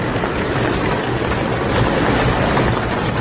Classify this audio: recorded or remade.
recorded